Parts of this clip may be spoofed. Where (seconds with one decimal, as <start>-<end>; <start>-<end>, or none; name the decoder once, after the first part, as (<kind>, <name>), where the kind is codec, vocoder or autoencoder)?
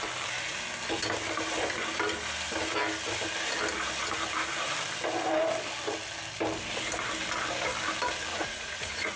8.3-9.2 (vocoder, Vocos)